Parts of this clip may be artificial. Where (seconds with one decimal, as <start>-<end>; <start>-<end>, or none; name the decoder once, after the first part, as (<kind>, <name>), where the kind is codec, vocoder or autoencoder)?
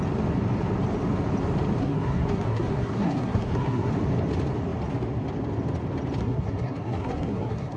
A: 1.8-3.9 (codec, SNAC); 6.2-7.8